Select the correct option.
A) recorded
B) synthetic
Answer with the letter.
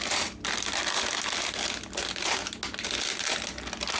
A